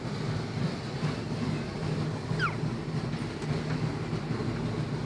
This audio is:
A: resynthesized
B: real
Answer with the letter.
B